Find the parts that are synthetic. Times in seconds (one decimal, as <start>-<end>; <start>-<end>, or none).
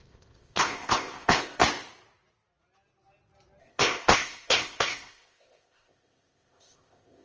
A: 0.0-1.6; 3.6-7.2